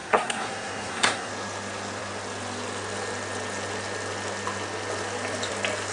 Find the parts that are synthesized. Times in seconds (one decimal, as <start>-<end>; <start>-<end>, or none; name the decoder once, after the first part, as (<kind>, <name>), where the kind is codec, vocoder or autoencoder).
0.0-1.3 (codec, SNAC)